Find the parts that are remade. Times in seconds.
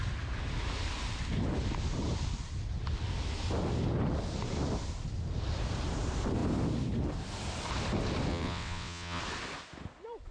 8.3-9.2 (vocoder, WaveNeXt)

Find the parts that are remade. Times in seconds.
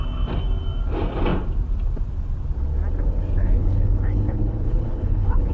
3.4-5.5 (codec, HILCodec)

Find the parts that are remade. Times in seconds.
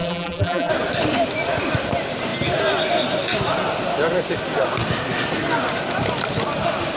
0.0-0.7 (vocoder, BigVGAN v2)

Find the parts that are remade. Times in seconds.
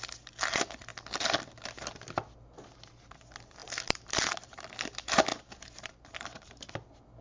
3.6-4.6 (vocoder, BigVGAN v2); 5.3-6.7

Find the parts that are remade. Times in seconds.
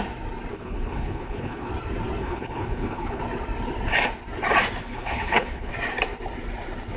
0.5-1.7 (codec, HILCodec); 2.2-3.2; 4.8-5.7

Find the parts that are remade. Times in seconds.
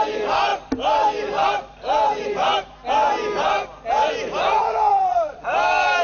4.9-5.4 (vocoder, Vocos)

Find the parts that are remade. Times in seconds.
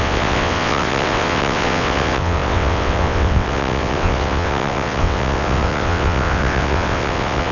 0.0-7.5 (vocoder, WaveNeXt)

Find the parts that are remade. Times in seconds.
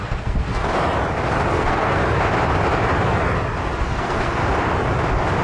0.0-0.6 (codec, SNAC); 1.5-2.0; 3.8-4.4